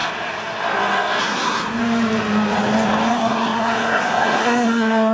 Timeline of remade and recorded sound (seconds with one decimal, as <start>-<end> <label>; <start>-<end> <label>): 0.0-1.2 recorded; 1.2-1.8 remade; 1.8-3.1 recorded; 3.1-5.1 remade